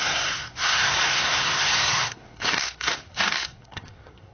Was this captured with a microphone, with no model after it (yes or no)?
no